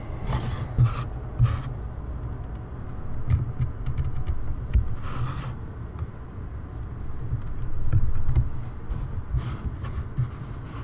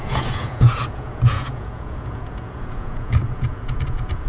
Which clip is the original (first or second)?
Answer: first